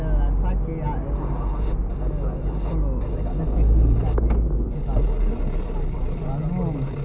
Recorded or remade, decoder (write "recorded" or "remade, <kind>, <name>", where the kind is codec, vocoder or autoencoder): recorded